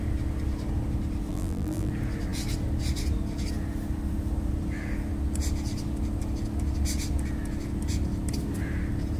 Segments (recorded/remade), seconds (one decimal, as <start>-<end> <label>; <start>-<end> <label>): 0.0-1.3 recorded; 1.3-1.9 remade; 1.9-9.2 recorded